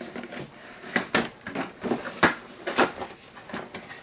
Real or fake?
real